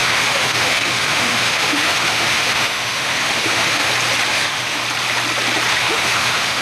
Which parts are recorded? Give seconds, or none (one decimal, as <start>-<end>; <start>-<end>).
3.9-4.3; 4.8-5.7